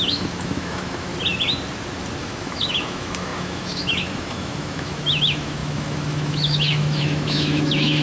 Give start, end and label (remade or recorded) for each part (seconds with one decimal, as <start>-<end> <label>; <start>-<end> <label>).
0.0-1.1 remade; 1.1-2.2 recorded; 2.2-8.0 remade